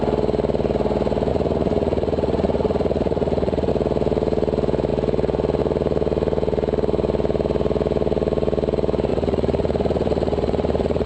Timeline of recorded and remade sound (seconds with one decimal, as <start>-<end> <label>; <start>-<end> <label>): 0.0-1.3 recorded; 1.3-3.7 remade; 3.7-9.1 recorded; 9.1-11.1 remade